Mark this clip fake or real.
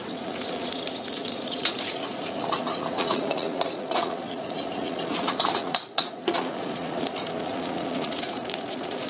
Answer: fake